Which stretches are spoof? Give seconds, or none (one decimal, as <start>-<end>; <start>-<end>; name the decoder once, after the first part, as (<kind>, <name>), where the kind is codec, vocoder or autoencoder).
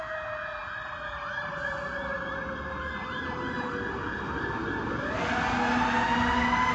none